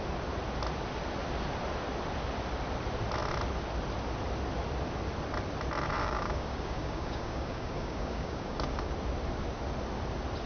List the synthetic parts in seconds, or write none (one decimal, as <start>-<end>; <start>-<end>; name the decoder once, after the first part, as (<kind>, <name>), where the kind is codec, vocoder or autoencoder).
6.0-8.9 (codec, DAC)